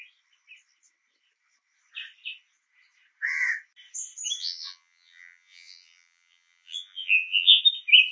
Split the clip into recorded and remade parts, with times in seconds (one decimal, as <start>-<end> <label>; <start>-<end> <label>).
0.0-4.4 recorded; 4.4-7.6 remade; 7.6-8.1 recorded